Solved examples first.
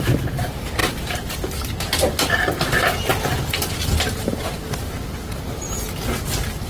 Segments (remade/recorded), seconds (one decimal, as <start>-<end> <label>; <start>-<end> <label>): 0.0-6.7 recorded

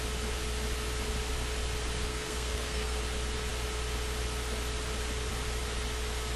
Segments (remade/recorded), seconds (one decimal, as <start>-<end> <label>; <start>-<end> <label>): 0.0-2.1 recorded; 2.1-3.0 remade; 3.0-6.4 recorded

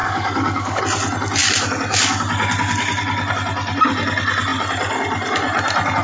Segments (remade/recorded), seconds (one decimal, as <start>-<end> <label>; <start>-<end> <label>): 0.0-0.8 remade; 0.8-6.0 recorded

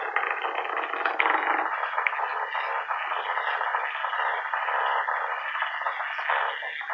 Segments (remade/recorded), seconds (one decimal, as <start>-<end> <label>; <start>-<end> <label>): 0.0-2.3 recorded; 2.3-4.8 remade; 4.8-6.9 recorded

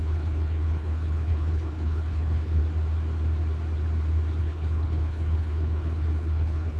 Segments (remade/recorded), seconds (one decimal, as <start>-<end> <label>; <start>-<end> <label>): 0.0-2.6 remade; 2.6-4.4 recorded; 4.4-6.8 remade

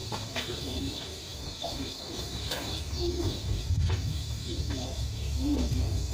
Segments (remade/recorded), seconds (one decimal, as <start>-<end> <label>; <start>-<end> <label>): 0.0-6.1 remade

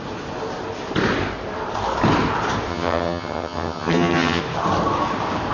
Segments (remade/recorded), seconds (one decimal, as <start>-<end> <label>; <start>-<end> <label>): 0.0-2.7 recorded; 2.7-4.4 remade; 4.4-5.5 recorded